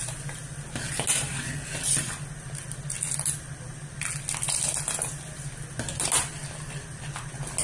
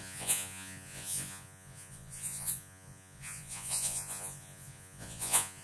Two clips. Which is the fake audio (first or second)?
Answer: second